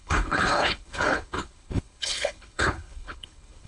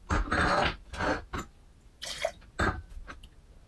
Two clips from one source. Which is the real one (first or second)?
second